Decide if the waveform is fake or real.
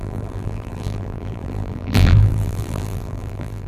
fake